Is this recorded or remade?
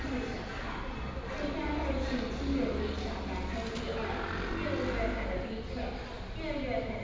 recorded